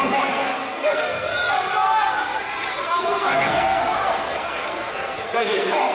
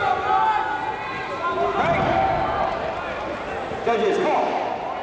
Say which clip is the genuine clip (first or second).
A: second